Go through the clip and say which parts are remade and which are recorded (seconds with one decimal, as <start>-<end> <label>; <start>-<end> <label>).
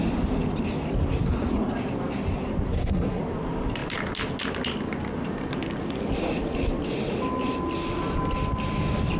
0.0-2.7 recorded; 2.7-3.2 remade; 3.2-9.2 recorded